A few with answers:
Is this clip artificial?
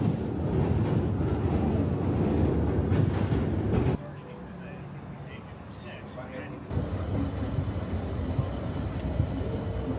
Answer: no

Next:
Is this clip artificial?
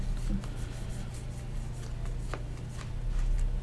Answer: no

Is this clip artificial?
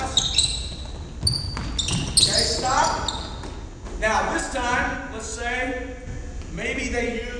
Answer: no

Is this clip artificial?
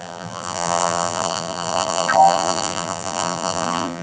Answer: yes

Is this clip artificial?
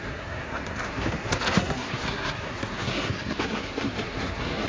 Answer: yes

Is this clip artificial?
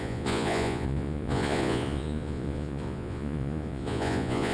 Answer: yes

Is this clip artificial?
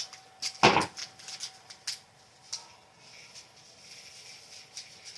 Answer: no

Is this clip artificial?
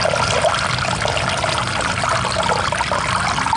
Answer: no